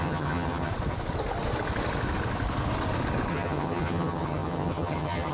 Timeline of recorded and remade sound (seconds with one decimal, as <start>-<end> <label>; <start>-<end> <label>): 0.0-0.7 remade; 0.7-3.3 recorded; 3.3-5.3 remade